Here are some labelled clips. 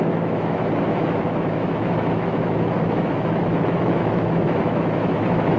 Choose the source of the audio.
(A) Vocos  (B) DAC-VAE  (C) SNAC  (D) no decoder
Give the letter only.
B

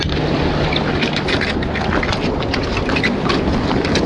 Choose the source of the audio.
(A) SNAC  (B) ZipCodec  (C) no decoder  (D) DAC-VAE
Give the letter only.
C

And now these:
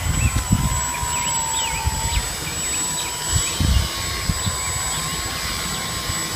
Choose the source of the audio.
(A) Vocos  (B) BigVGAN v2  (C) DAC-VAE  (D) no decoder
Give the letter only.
D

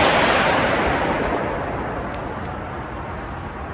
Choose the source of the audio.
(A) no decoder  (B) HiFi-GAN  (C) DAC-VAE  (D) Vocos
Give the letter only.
A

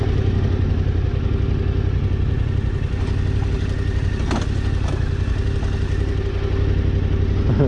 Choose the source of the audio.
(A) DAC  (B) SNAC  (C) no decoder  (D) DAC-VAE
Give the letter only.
C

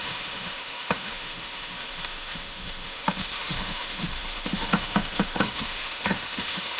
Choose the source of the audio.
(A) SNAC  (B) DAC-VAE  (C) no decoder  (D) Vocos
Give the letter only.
B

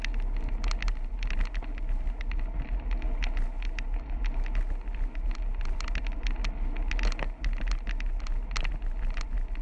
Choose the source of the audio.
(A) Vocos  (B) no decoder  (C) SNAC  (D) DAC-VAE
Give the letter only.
B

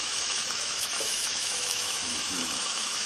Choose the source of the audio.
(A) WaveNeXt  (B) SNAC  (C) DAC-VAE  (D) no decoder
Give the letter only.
C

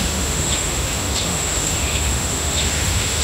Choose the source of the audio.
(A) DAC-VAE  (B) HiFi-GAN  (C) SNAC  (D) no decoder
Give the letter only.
A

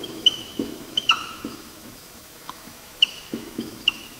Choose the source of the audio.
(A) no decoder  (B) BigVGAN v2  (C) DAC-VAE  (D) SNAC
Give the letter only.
C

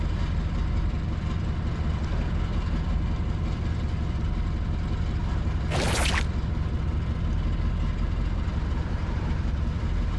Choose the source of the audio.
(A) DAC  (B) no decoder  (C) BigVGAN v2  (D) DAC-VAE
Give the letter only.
B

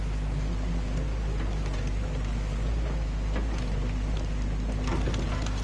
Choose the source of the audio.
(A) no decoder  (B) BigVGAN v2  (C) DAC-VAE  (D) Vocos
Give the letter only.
A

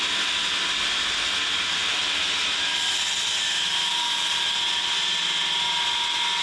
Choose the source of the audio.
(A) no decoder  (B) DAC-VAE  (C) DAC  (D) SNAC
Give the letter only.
A